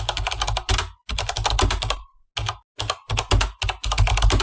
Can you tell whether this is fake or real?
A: real